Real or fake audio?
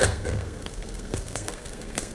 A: fake